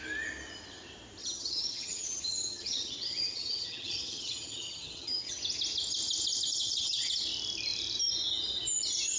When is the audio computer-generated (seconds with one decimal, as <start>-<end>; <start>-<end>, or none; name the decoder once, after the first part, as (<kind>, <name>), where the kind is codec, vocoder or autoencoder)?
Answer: 1.2-5.4 (vocoder, HiFi-GAN); 6.5-7.2